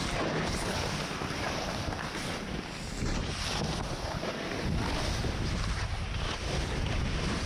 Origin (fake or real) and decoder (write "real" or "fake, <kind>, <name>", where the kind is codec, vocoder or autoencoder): real